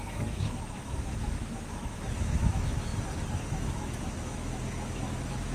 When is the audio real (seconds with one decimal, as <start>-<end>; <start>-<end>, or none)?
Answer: 2.9-3.5